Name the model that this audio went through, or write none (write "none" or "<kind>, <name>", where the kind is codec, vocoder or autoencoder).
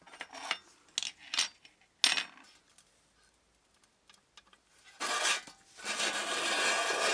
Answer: none